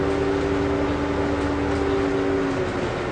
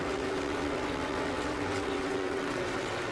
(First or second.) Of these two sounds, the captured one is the first